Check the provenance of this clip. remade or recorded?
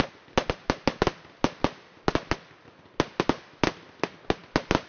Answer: recorded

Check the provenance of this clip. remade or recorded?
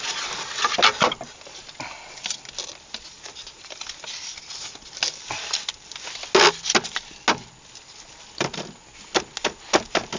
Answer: recorded